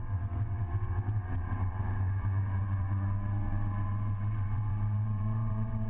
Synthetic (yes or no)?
yes